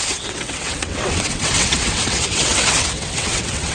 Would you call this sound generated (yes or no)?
yes